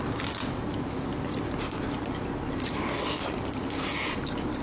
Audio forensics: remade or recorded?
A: recorded